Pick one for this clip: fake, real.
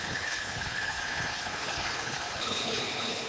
fake